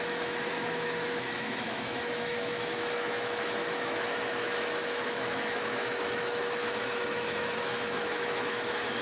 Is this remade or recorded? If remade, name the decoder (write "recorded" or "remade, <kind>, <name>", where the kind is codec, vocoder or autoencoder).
remade, autoencoder, DAC-VAE